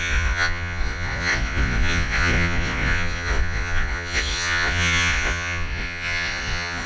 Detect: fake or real fake